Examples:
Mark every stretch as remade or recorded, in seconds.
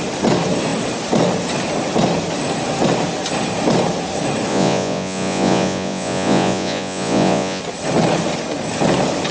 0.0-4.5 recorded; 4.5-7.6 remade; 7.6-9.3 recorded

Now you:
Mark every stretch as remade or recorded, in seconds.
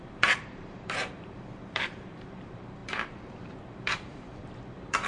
0.0-5.1 remade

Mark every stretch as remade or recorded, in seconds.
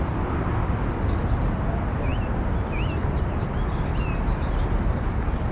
0.0-5.5 recorded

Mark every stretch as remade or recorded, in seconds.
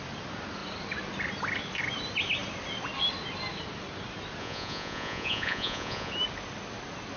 0.0-4.4 recorded; 4.4-6.1 remade; 6.1-7.2 recorded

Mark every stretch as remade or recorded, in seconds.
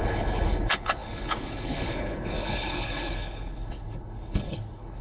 0.0-5.0 remade